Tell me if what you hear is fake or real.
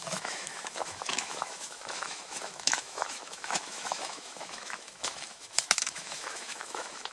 fake